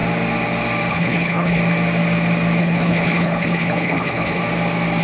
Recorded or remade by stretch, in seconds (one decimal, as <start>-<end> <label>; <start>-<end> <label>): 0.0-0.9 recorded; 0.9-1.6 remade; 1.6-2.6 recorded; 2.6-4.4 remade; 4.4-5.0 recorded